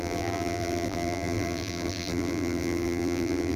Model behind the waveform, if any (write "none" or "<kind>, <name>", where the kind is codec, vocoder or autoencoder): vocoder, BigVGAN v2